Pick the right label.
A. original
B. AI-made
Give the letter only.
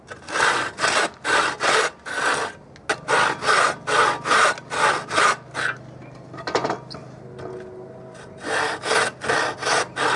A